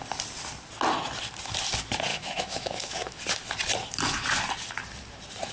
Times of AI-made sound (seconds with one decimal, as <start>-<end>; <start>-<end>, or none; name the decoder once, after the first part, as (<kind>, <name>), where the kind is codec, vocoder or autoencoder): 2.1-3.2 (autoencoder, DAC-VAE)

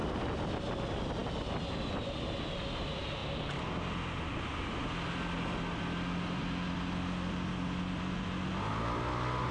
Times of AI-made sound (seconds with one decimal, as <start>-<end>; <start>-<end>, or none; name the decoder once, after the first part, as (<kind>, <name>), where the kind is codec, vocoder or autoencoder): none

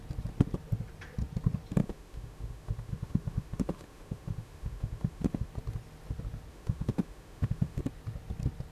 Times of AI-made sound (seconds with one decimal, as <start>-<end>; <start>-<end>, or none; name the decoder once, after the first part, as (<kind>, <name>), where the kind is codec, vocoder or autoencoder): 1.8-5.5 (autoencoder, DAC-VAE); 6.5-7.8

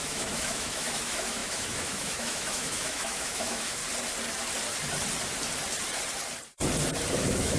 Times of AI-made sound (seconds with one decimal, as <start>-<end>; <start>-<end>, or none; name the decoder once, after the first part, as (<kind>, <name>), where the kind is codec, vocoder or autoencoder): 0.0-3.8 (autoencoder, DAC-VAE); 7.1-7.6

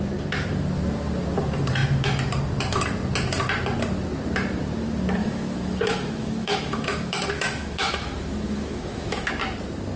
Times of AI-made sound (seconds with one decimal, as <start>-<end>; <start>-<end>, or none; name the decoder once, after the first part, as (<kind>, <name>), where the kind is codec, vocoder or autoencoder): 5.2-9.3 (autoencoder, DAC-VAE)

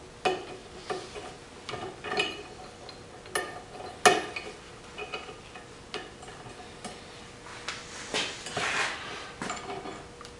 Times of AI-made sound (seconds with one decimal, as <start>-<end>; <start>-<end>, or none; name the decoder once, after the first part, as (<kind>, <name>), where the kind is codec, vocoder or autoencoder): none

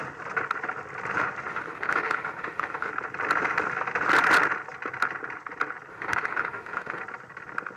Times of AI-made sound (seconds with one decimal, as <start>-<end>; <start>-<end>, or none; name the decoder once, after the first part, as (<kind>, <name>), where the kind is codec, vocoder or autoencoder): 1.5-2.9 (autoencoder, DAC-VAE); 5.9-7.0